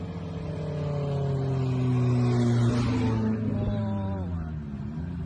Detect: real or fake real